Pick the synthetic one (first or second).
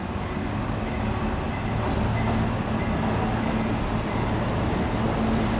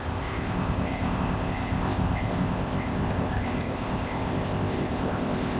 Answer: second